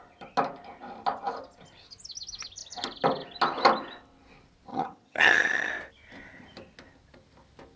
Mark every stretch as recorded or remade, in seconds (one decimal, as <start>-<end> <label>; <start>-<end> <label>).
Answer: 0.0-4.7 recorded; 4.7-5.7 remade; 5.7-7.8 recorded

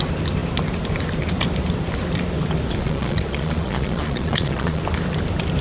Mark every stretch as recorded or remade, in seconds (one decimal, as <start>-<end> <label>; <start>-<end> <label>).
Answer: 0.0-2.7 recorded; 2.7-4.8 remade; 4.8-5.6 recorded

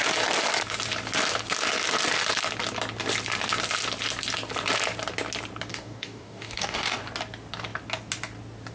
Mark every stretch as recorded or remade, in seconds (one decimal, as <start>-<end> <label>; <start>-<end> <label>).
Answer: 0.0-5.7 recorded; 5.7-7.0 remade; 7.0-8.7 recorded

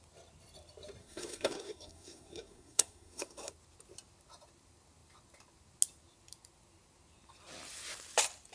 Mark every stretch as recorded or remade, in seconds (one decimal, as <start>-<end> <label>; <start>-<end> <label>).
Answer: 0.0-1.0 recorded; 1.0-3.5 remade; 3.5-8.5 recorded

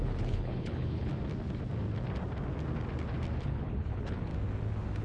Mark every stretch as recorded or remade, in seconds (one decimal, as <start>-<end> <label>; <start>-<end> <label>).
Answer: 0.0-1.1 remade; 1.1-3.4 recorded; 3.4-4.3 remade; 4.3-5.0 recorded

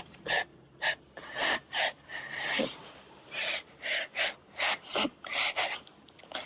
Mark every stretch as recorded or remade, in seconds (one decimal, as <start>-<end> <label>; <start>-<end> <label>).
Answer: 0.0-2.1 remade; 2.1-2.6 recorded; 2.6-6.5 remade

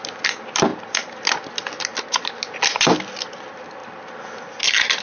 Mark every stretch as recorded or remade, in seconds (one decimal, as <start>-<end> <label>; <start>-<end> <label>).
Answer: 0.0-5.0 recorded